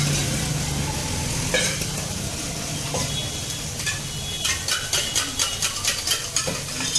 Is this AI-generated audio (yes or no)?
no